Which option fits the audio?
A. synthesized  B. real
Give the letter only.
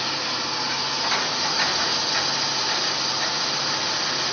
B